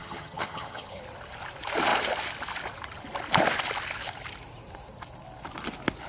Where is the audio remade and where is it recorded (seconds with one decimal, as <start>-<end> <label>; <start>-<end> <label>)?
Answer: 0.0-1.0 remade; 1.0-6.1 recorded